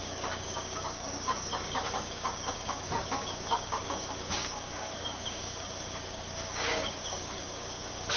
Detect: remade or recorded remade